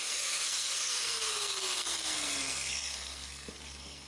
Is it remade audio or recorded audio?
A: remade